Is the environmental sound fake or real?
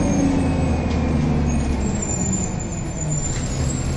real